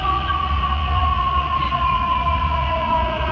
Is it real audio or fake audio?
fake